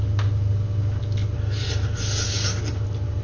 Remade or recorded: recorded